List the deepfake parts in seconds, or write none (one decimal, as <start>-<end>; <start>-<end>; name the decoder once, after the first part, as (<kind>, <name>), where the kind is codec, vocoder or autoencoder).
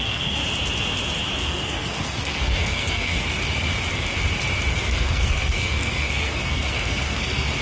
0.0-0.4 (codec, SNAC); 1.4-3.4; 4.7-7.6